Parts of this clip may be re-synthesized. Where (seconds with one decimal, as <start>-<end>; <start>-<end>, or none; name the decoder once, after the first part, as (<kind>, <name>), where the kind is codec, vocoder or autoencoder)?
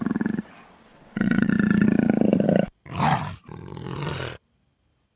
0.9-1.5 (vocoder, WaveNeXt)